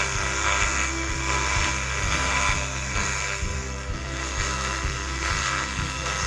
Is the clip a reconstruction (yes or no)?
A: yes